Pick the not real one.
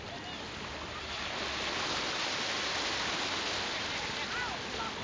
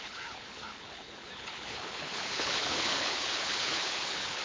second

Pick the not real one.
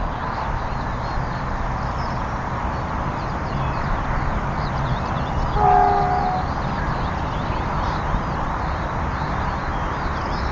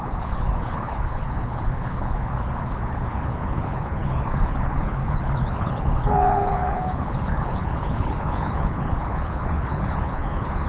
second